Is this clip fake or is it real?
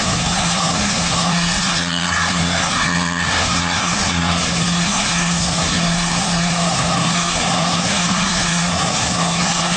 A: fake